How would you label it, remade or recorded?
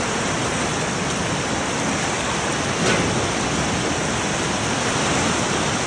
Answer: recorded